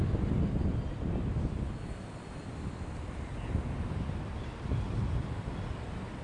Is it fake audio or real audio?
real